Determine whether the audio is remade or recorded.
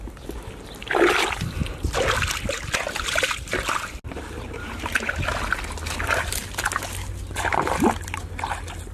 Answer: recorded